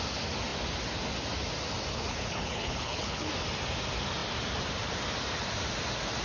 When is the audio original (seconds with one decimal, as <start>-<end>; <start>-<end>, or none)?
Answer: 0.0-1.9; 3.3-6.2

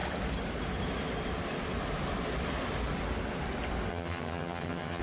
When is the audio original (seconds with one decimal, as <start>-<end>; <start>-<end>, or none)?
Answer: 0.0-3.9

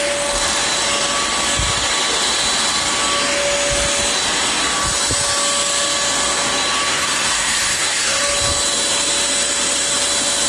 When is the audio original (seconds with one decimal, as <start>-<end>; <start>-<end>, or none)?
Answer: 0.0-6.9; 8.2-10.5

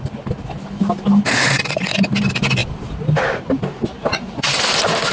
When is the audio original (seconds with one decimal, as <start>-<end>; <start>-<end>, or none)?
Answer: 0.0-5.1

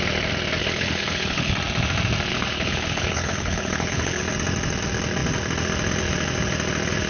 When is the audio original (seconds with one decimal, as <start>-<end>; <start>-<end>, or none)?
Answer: 0.0-0.6; 1.5-2.3; 4.2-7.1